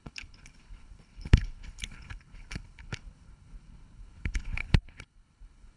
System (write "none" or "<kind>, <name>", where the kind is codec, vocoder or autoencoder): codec, HILCodec